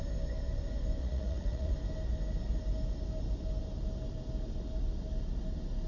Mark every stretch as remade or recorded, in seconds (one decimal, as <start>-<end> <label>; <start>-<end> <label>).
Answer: 0.0-1.0 recorded; 1.0-1.7 remade; 1.7-5.9 recorded